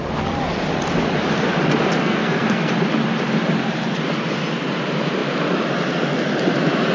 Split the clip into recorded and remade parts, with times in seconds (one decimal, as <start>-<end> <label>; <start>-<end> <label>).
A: 0.0-2.0 recorded; 2.0-2.7 remade; 2.7-6.9 recorded